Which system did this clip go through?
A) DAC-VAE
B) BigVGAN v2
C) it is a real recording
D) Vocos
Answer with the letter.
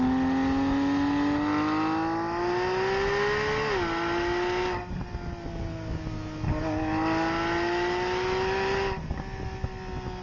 C